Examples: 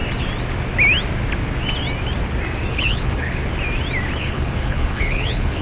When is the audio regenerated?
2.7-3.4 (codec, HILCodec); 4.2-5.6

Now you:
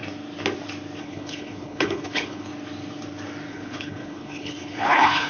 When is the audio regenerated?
1.0-2.5 (codec, HILCodec); 3.5-5.3

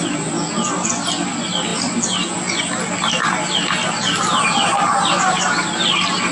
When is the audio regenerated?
none

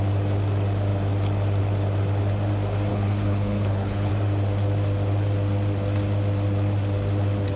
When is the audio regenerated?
2.9-4.1 (codec, HILCodec)

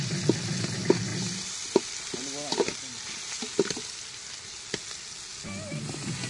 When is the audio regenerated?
none